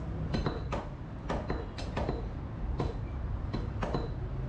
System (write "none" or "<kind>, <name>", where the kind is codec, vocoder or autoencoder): none